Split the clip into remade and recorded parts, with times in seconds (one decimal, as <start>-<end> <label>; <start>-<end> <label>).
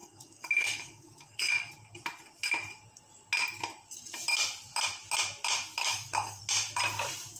0.0-1.7 remade; 1.7-5.8 recorded; 5.8-6.4 remade; 6.4-7.4 recorded